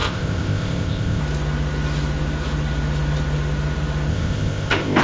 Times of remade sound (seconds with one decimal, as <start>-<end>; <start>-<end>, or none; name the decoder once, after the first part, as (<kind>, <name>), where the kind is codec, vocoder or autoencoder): 0.0-1.2 (codec, ZipCodec); 4.1-5.0